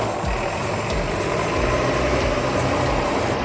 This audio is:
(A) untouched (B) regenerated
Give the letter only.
A